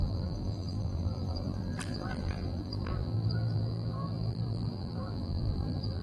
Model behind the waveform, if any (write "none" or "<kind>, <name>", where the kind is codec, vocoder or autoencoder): vocoder, BigVGAN v2